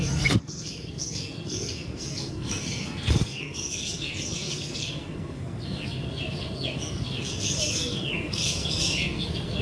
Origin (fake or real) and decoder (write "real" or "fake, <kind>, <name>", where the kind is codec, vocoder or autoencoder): fake, codec, SNAC